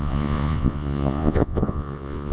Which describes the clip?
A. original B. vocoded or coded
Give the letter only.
B